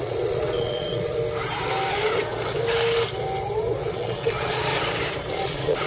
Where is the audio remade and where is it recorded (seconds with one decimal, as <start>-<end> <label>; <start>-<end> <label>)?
0.0-1.2 remade; 1.2-3.9 recorded; 3.9-4.7 remade; 4.7-5.3 recorded; 5.3-5.9 remade